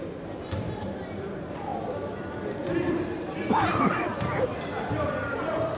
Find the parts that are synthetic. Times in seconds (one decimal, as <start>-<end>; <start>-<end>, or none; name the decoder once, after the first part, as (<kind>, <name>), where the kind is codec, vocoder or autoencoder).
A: 0.0-1.7 (vocoder, BigVGAN v2); 2.9-4.1; 4.9-5.8

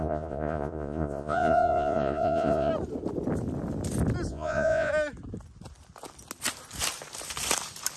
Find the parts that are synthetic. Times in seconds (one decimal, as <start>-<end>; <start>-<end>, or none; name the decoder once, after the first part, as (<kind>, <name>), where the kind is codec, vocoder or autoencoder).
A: 0.0-2.7 (vocoder, Vocos); 4.3-4.9

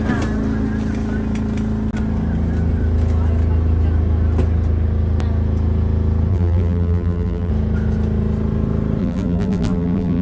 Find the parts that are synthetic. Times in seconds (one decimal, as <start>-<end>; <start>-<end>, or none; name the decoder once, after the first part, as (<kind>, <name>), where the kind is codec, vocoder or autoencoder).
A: 6.3-7.5 (vocoder, BigVGAN v2); 9.0-10.2